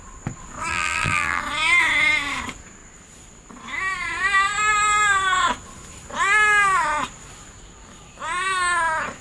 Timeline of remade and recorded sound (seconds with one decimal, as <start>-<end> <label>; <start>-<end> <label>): 0.0-0.7 recorded; 0.7-1.4 remade; 1.4-9.2 recorded